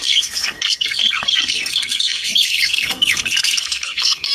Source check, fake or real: fake